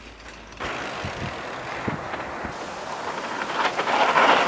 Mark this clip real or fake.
real